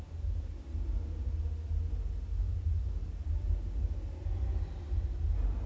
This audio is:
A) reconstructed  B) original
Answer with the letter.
B